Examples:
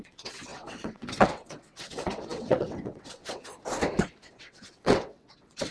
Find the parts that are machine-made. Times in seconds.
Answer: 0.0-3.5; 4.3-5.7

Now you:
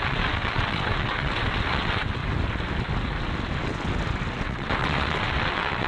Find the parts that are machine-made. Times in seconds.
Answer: 0.0-2.2; 4.4-5.9

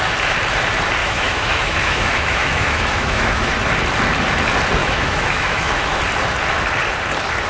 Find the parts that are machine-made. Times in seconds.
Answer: 1.0-3.5; 4.8-6.0

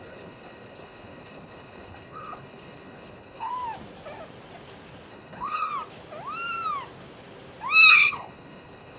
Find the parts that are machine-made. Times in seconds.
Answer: 0.0-3.5; 5.1-5.7; 7.9-9.0

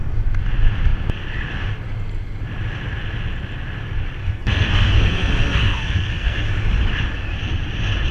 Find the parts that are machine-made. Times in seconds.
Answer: 4.2-6.5

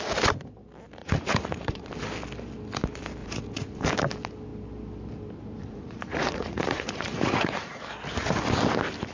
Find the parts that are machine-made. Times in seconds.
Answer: 1.0-1.9; 3.2-3.8; 5.6-7.8

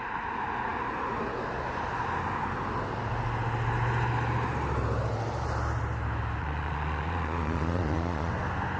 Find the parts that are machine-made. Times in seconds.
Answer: 6.4-8.3

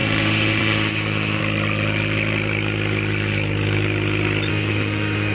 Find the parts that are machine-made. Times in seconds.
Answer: 0.0-1.4; 4.5-5.3